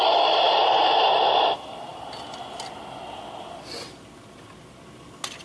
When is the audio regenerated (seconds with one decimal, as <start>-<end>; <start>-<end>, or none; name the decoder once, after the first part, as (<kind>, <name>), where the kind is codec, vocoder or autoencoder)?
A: none